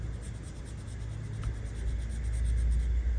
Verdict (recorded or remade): recorded